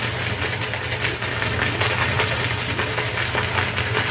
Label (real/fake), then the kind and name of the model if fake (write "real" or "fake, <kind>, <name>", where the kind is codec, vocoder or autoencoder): real